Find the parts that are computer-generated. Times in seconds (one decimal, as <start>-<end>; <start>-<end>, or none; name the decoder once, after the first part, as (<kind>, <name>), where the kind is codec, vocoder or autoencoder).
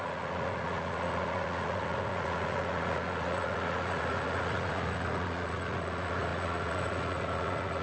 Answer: 0.0-7.8 (vocoder, Vocos)